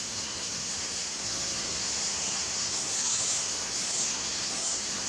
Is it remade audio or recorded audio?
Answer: remade